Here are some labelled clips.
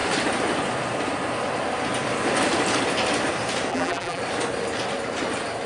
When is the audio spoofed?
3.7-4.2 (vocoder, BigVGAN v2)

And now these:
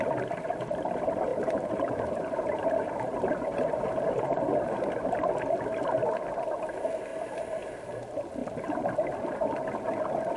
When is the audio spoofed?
1.3-5.1 (vocoder, BigVGAN v2); 7.1-7.7; 8.4-8.9